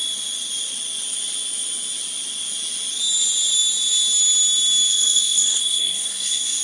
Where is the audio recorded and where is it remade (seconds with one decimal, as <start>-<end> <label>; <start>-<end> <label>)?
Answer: 0.0-4.9 recorded; 4.9-6.6 remade